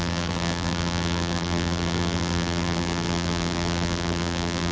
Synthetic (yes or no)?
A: yes